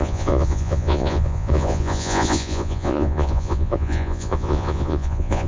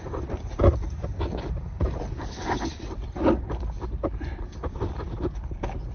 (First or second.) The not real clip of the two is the first